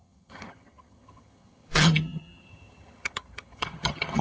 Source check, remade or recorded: remade